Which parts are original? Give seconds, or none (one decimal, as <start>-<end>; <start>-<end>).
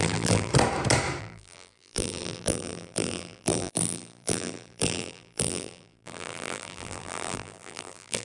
0.5-1.2